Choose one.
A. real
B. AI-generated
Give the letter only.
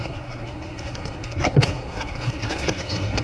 B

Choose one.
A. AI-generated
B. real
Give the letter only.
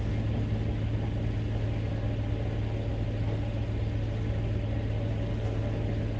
B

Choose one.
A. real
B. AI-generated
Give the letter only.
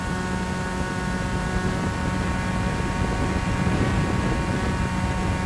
A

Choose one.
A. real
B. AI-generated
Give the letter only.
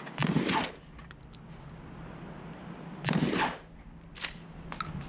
A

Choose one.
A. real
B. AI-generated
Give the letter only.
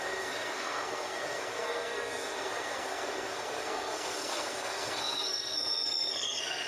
B